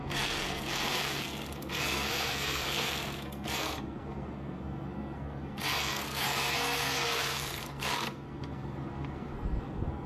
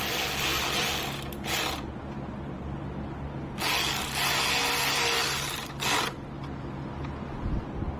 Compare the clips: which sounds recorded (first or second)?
second